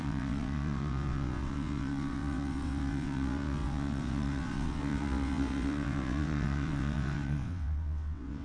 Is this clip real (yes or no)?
no